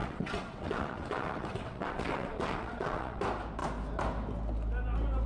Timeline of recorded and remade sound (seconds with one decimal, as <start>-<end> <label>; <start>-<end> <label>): 0.0-3.2 remade; 3.2-5.3 recorded

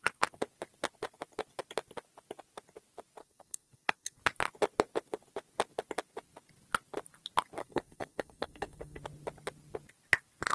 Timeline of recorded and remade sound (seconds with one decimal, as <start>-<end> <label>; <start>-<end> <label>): 0.0-3.2 recorded; 3.2-4.2 remade; 4.2-7.6 recorded; 7.6-9.0 remade; 9.0-10.5 recorded

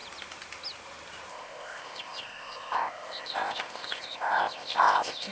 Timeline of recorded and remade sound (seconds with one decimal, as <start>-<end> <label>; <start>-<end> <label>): 0.0-1.3 recorded; 1.3-5.3 remade

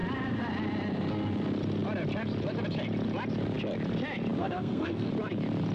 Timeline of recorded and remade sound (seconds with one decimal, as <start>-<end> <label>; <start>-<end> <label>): 0.0-4.4 recorded; 4.4-5.1 remade; 5.1-5.7 recorded

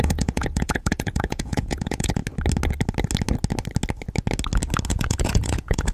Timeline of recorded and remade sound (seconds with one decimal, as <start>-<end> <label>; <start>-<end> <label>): 0.0-2.2 remade; 2.2-4.9 recorded; 4.9-5.9 remade

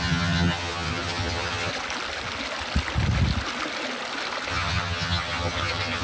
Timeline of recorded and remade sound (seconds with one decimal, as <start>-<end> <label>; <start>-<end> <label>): 0.0-1.7 remade; 1.7-4.5 recorded; 4.5-6.0 remade

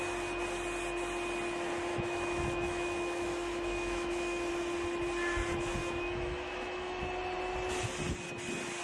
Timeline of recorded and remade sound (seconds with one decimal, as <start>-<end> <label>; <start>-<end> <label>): 0.0-1.9 recorded; 1.9-4.5 remade; 4.5-5.8 recorded; 5.8-7.0 remade; 7.0-8.8 recorded

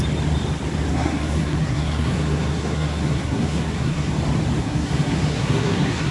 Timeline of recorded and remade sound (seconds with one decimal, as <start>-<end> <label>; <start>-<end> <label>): 0.0-0.9 recorded; 0.9-4.1 remade; 4.1-4.6 recorded; 4.6-6.1 remade